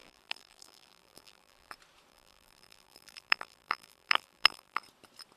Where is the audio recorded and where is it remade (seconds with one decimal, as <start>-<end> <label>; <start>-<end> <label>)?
0.0-1.7 remade; 1.7-2.1 recorded; 2.1-4.8 remade; 4.8-5.4 recorded